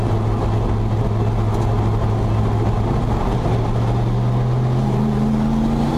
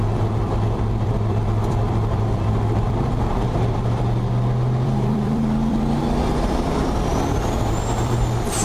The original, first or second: first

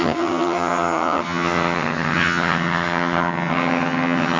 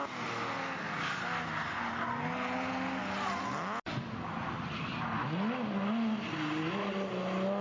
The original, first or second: second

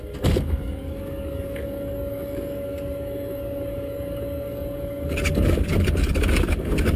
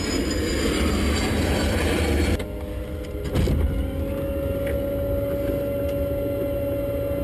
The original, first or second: second